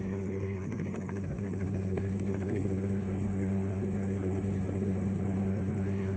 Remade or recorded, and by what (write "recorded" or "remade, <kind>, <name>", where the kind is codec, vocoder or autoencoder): remade, codec, SNAC